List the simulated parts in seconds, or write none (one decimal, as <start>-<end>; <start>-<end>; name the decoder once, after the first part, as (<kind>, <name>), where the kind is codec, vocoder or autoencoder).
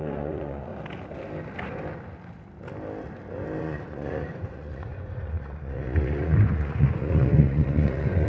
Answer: 0.0-0.7 (vocoder, Vocos); 3.6-8.3